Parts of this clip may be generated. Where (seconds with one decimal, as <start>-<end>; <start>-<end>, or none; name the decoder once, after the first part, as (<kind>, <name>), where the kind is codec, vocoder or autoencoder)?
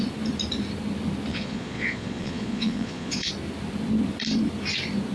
1.3-3.3 (vocoder, Vocos)